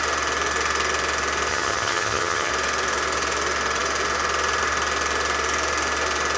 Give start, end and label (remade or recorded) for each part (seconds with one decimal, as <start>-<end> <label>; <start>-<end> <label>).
0.0-1.5 recorded; 1.5-2.5 remade; 2.5-6.4 recorded